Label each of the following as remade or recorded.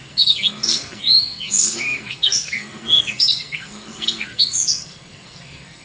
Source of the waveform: remade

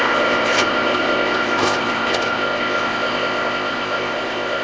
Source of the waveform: remade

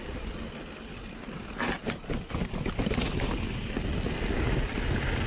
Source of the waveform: recorded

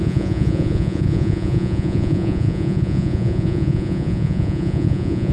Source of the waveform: remade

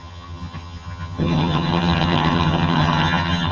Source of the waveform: remade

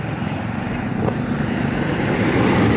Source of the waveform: remade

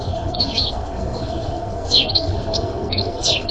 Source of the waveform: remade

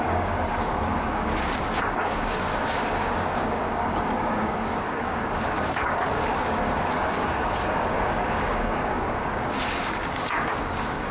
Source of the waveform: remade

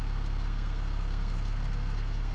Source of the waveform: remade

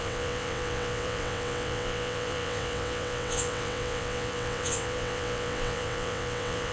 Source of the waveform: remade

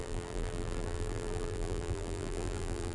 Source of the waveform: remade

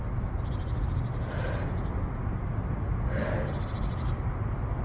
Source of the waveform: recorded